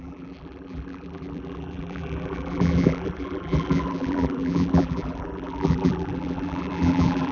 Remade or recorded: remade